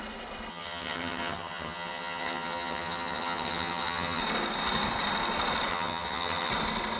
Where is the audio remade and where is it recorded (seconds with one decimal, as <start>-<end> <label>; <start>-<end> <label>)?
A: 0.0-0.5 recorded; 0.5-4.2 remade; 4.2-5.7 recorded; 5.7-6.5 remade; 6.5-7.0 recorded